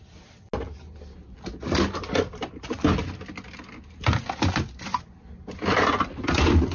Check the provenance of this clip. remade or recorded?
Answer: recorded